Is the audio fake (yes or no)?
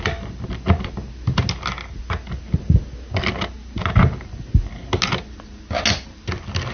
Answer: no